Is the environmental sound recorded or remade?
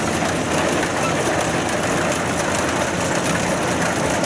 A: recorded